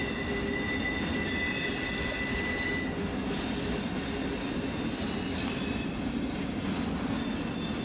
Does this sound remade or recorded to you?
recorded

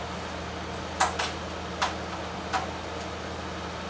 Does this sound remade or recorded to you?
recorded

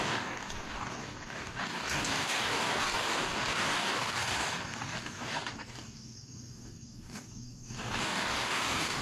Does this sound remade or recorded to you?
remade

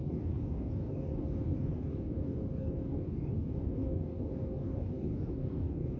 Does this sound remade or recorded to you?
remade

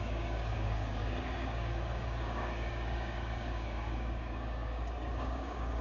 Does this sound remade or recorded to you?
remade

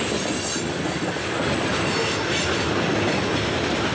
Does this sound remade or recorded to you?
recorded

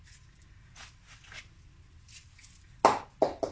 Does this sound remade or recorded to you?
recorded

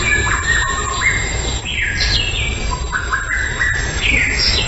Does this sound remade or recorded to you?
recorded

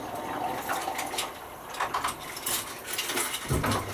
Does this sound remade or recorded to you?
recorded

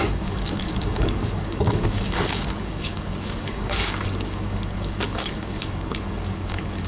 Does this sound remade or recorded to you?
remade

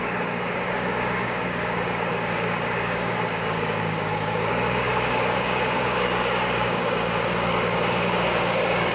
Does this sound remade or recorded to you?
remade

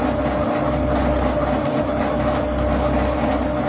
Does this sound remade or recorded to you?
recorded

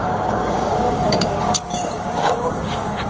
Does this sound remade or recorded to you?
remade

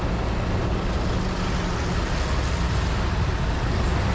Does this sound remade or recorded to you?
recorded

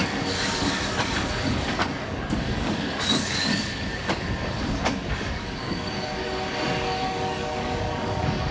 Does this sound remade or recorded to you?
remade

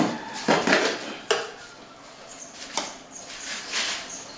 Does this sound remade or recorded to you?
recorded